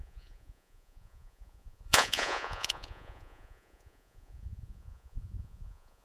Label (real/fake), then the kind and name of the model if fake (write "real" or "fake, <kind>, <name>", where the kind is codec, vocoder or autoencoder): fake, vocoder, Vocos